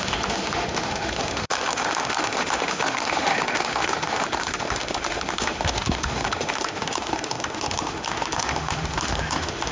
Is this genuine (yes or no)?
no